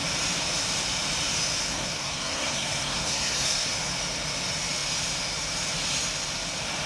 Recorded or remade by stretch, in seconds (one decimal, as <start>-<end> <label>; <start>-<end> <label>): 0.0-1.7 recorded; 1.7-3.7 remade; 3.7-6.9 recorded